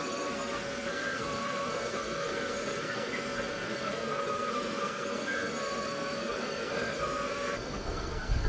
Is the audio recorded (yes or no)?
no